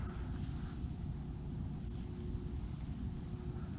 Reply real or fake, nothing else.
real